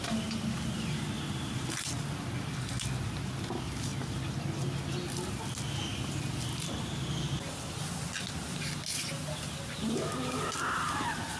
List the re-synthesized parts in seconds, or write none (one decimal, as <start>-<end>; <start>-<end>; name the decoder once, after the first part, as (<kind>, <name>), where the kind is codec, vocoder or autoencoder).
none